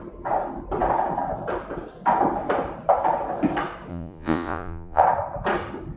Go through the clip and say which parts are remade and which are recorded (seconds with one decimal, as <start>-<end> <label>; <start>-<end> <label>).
0.0-3.9 recorded; 3.9-5.0 remade; 5.0-6.0 recorded